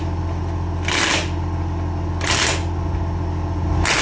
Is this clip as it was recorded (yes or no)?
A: yes